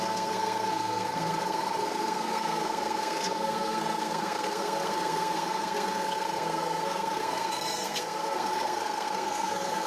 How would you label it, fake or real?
fake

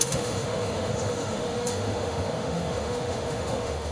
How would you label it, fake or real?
fake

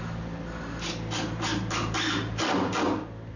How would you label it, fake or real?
real